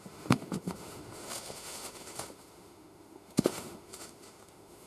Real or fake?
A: fake